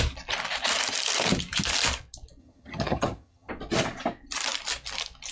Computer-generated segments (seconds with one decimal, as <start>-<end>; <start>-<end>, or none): 2.4-3.5